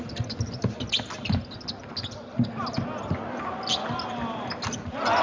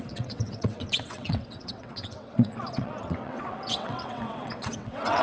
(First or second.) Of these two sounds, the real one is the first